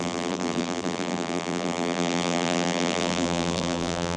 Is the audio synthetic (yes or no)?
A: yes